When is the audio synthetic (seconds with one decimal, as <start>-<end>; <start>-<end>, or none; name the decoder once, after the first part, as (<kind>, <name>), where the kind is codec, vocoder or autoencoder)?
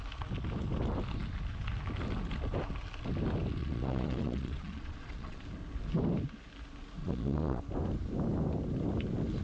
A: 3.6-5.4 (vocoder, Vocos); 7.0-7.6